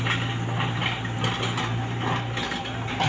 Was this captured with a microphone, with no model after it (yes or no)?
yes